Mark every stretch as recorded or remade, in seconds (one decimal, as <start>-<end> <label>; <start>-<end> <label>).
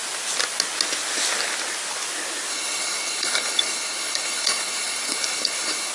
0.0-2.5 recorded; 2.5-5.9 remade